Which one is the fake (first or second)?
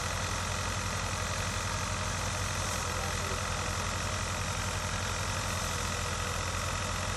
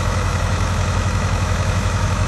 second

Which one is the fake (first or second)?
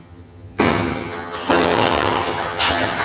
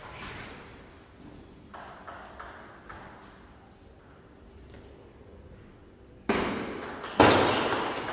first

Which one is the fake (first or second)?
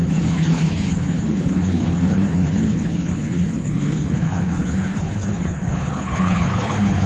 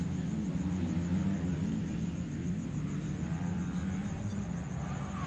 first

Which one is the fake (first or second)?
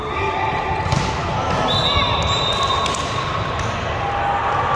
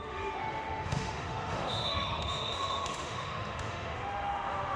second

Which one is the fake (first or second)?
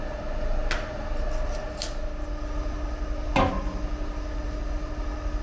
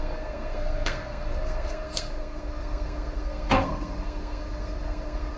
second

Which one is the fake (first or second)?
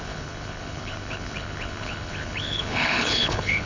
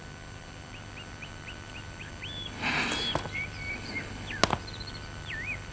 first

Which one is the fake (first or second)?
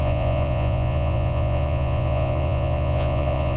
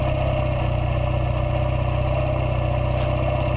first